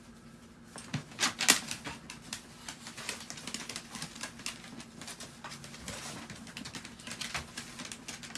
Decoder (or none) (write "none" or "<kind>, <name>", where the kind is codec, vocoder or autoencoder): none